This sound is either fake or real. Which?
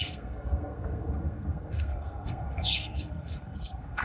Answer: fake